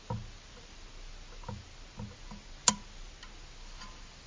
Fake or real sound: real